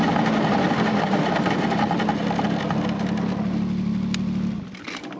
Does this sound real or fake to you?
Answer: real